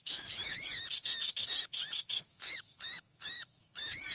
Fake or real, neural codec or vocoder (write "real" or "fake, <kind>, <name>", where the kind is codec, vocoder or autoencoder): fake, autoencoder, DAC-VAE